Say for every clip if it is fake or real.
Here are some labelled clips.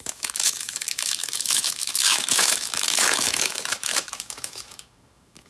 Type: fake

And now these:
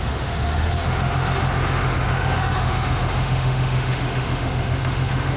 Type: fake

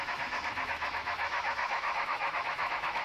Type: fake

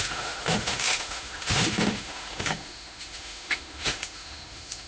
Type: fake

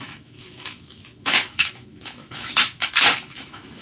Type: fake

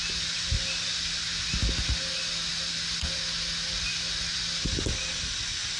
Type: real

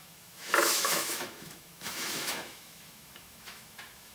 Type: fake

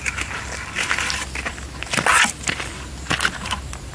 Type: real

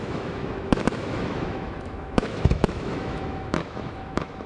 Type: fake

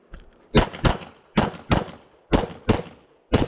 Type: real